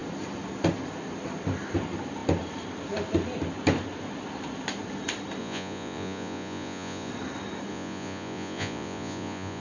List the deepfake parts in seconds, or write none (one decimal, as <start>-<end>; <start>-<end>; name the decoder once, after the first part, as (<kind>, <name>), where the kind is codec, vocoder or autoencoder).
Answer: 5.4-7.1 (vocoder, Vocos); 7.7-9.6